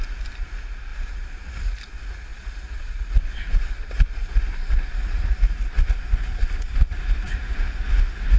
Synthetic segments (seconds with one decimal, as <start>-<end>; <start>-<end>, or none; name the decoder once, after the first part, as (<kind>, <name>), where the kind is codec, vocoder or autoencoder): none